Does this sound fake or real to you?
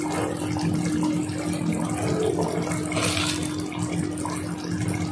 real